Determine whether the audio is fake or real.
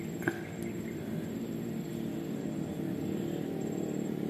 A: real